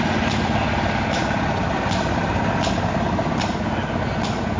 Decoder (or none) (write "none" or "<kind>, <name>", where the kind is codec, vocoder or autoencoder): none